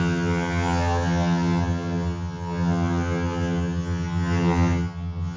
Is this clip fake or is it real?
fake